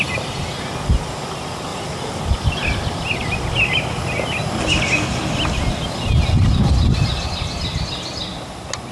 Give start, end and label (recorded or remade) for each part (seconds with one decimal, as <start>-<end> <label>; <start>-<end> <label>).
0.0-1.7 recorded; 1.7-2.2 remade; 2.2-8.9 recorded